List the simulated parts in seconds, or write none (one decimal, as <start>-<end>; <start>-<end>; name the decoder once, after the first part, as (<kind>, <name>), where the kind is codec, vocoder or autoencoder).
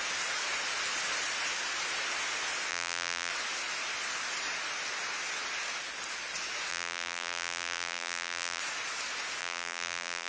2.7-3.3 (vocoder, BigVGAN v2); 6.7-8.6; 9.4-10.3